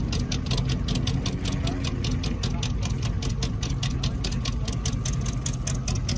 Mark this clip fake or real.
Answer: real